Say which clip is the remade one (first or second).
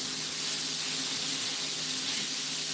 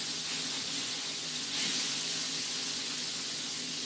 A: second